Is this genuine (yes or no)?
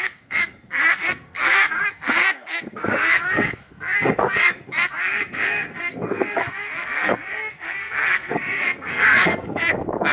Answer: no